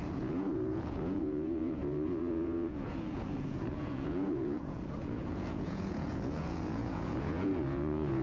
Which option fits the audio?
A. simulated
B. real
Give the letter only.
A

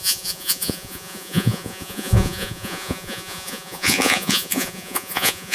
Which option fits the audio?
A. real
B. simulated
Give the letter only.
B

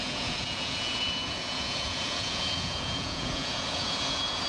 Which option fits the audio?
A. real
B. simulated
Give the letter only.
B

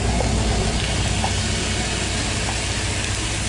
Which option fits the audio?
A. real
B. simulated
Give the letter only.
A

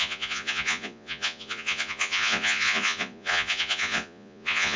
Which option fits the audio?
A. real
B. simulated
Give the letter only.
B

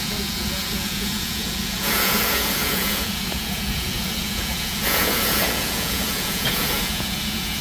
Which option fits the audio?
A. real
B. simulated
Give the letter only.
B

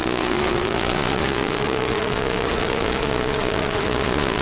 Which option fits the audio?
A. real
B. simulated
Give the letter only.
B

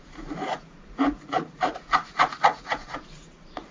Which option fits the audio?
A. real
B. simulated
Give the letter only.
B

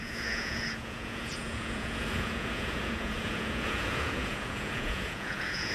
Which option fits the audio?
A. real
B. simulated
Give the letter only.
B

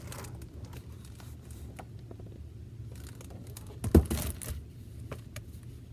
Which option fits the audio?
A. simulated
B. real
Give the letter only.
B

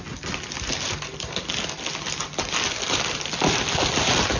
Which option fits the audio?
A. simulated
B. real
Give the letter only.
B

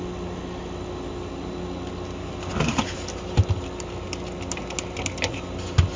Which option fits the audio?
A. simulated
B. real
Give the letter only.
B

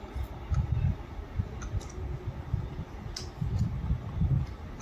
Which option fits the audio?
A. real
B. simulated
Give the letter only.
A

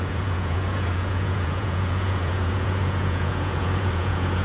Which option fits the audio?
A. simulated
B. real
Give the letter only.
A